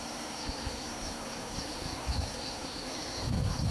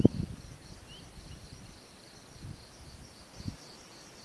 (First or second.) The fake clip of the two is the first